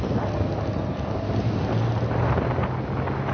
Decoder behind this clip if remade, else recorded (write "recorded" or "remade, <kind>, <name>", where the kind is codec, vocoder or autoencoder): recorded